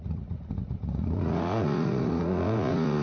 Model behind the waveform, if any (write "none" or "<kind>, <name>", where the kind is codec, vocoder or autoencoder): vocoder, Vocos